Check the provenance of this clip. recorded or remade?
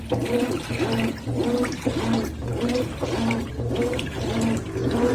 recorded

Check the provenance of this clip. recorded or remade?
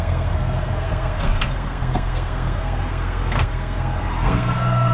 remade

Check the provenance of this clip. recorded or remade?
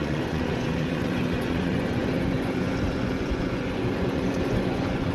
remade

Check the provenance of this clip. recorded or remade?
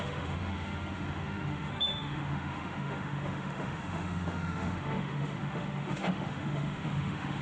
remade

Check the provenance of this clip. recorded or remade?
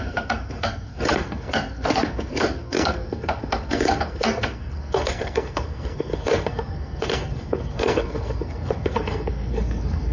remade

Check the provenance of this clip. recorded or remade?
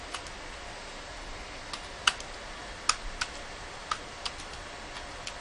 recorded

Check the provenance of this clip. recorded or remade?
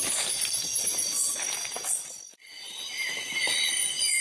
recorded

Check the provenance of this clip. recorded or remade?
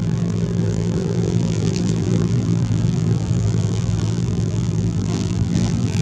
remade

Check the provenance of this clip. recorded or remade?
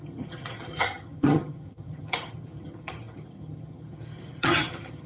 remade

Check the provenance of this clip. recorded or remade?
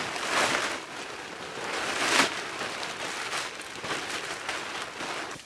recorded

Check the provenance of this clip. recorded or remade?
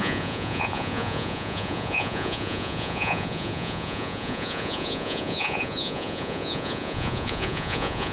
remade